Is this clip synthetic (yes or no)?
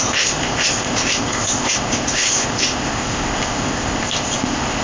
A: yes